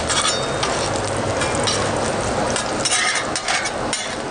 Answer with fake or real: real